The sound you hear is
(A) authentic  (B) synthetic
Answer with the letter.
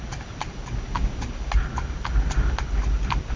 A